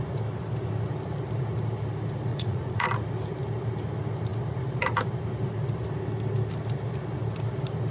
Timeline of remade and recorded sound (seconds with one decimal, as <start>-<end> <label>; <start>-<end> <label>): 0.0-2.3 recorded; 2.3-2.9 remade; 2.9-7.9 recorded

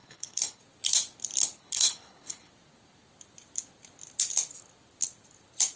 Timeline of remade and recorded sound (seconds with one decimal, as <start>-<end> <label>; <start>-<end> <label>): 0.0-0.6 remade; 0.6-1.6 recorded; 1.6-2.5 remade; 2.5-5.8 recorded

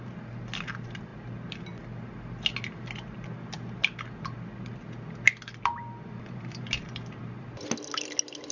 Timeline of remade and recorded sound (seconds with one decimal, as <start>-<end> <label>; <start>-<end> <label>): 0.0-8.5 recorded

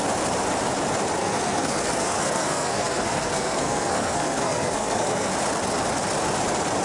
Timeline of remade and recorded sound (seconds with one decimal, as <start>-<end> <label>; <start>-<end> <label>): 0.0-1.2 recorded; 1.2-5.3 remade; 5.3-6.8 recorded

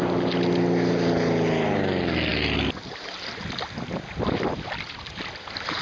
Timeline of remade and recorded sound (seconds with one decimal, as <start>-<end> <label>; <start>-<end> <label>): 0.0-5.8 recorded